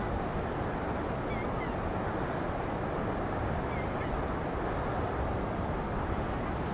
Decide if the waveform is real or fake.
real